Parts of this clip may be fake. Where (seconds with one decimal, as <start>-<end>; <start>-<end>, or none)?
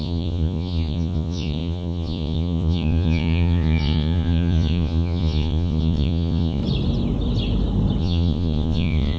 0.0-6.6; 8.0-9.2